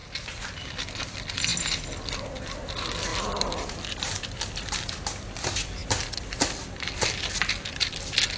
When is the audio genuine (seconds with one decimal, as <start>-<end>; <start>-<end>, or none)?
0.0-3.1; 4.2-8.4